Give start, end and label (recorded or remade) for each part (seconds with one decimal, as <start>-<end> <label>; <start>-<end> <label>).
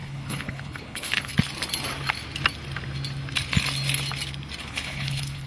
0.0-1.3 remade; 1.3-4.6 recorded; 4.6-5.5 remade